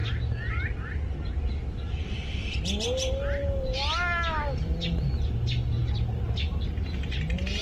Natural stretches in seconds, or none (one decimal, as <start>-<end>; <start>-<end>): 0.0-7.6